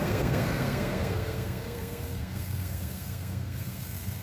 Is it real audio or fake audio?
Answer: fake